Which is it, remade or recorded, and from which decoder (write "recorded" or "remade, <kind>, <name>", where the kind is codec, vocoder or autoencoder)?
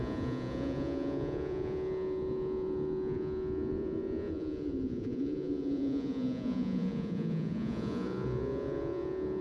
remade, vocoder, Vocos